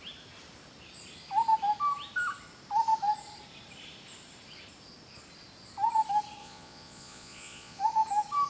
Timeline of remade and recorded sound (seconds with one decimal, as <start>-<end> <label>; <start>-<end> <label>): 0.0-6.4 recorded; 6.4-7.8 remade; 7.8-8.5 recorded